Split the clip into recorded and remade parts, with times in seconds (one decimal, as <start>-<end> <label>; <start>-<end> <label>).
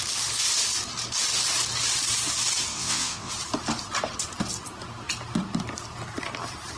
0.0-2.7 recorded; 2.7-3.3 remade; 3.3-6.8 recorded